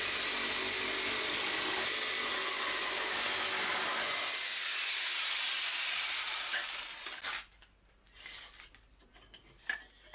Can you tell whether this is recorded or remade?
recorded